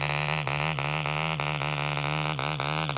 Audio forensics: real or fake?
real